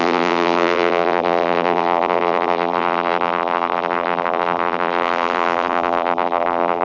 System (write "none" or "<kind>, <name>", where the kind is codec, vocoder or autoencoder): vocoder, BigVGAN v2